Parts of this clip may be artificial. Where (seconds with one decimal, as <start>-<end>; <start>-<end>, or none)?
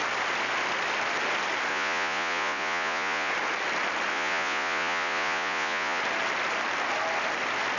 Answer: 1.7-3.3; 4.1-6.0